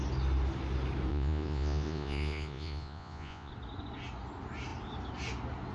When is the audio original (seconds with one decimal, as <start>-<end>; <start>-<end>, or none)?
0.0-1.1; 3.5-5.7